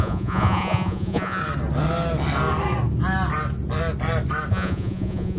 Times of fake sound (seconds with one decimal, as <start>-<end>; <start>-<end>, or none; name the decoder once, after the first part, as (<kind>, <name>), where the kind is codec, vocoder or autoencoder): 0.0-1.4 (vocoder, Vocos); 4.5-5.4